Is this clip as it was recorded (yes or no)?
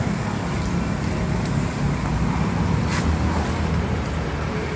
yes